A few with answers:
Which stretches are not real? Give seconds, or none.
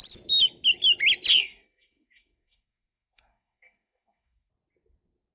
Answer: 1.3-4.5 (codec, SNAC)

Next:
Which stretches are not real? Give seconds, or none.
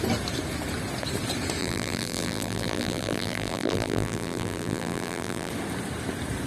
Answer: 1.6-5.5 (vocoder, BigVGAN v2)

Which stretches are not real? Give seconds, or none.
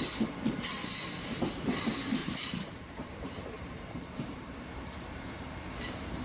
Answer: 2.2-6.2 (vocoder, BigVGAN v2)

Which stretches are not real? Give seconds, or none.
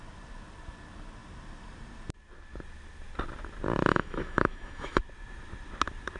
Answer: 3.9-5.0 (autoencoder, DAC-VAE)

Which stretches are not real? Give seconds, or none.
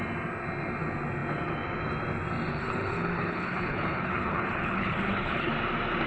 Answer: 2.5-5.5 (codec, HILCodec)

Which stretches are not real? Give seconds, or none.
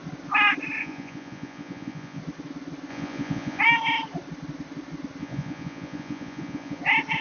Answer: 0.8-2.2 (vocoder, Vocos); 2.9-3.6; 5.2-6.8